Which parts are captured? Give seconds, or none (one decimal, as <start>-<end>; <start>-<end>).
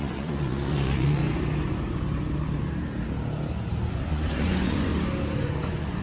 1.2-3.9; 4.9-5.4